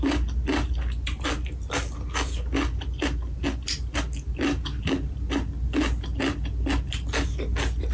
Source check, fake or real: real